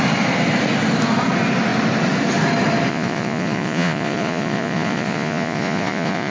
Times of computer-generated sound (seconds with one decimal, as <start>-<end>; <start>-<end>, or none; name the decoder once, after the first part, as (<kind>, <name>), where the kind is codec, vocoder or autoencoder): 2.9-6.3 (vocoder, Vocos)